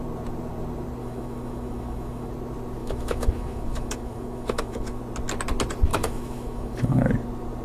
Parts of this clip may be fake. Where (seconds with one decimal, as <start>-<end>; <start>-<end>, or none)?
1.0-2.3; 2.8-5.0; 5.9-7.1